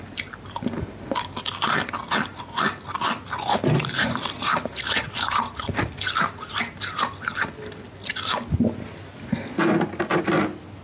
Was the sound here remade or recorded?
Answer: recorded